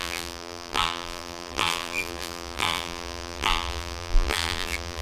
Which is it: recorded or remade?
remade